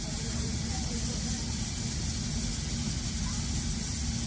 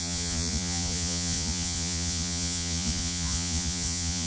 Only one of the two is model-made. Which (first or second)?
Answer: second